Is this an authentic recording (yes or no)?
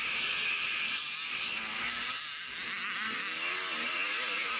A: yes